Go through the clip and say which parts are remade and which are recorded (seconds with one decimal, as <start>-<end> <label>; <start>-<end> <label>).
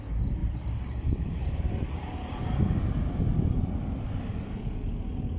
0.0-0.4 recorded; 0.4-2.4 remade; 2.4-5.4 recorded